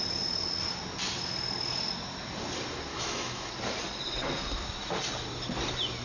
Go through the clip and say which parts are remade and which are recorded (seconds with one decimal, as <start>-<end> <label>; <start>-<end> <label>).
0.0-2.9 recorded; 2.9-3.5 remade; 3.5-6.0 recorded